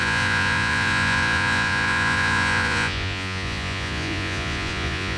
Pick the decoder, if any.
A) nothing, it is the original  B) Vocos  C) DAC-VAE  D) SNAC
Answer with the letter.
B